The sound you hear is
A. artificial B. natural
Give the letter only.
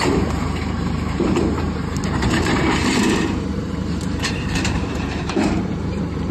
A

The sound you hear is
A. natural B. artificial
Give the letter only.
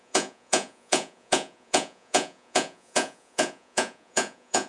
B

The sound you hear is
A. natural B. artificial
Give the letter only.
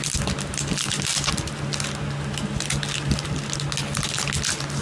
A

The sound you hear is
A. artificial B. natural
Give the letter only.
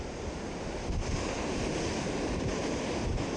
B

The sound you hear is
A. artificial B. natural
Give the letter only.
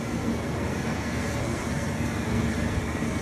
A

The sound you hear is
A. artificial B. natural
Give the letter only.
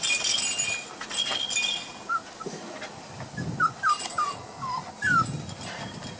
B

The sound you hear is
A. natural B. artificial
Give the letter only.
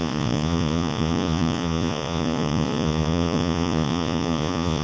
B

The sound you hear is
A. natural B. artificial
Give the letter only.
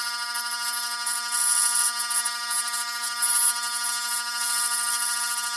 A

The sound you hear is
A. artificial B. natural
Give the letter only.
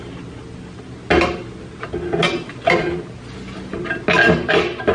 B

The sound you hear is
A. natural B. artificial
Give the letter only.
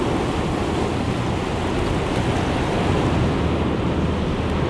A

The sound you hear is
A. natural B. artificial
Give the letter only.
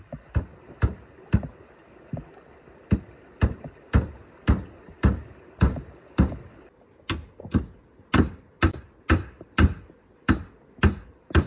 A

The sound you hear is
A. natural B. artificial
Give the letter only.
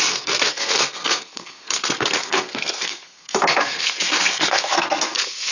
B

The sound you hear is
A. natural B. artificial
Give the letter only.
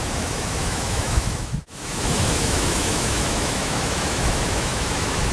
B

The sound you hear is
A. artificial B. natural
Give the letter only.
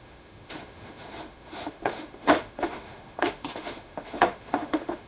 A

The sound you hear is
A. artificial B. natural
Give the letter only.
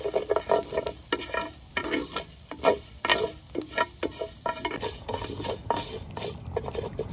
B